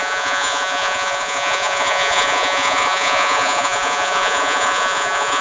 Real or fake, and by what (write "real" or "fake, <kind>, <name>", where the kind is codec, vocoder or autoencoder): fake, vocoder, Vocos